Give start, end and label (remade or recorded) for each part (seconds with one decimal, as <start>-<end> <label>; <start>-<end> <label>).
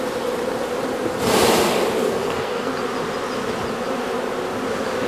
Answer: 0.0-2.0 recorded; 2.0-2.7 remade; 2.7-5.1 recorded